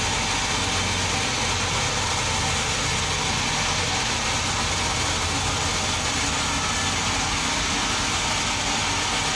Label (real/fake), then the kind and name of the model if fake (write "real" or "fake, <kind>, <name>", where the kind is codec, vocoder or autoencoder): real